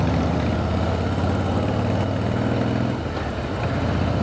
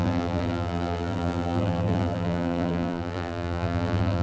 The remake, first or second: second